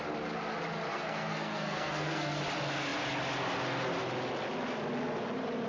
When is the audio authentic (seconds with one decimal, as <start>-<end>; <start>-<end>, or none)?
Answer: 0.0-0.9; 2.4-5.7